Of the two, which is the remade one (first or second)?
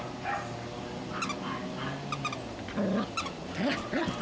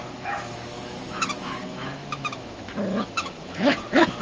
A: second